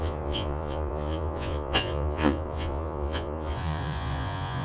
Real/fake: fake